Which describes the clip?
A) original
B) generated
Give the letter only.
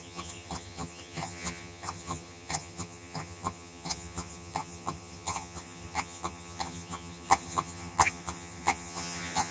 B